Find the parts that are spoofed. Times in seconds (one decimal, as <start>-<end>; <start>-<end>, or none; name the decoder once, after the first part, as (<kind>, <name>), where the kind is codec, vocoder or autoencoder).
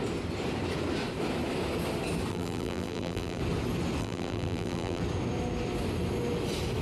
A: 2.3-3.4 (vocoder, BigVGAN v2); 4.0-5.0